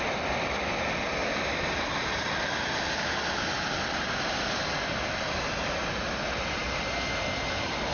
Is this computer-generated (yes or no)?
no